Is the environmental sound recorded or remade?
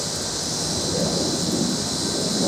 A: recorded